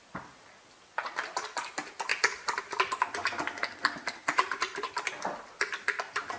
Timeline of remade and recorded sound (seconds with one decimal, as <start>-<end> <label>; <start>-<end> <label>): 0.0-6.4 recorded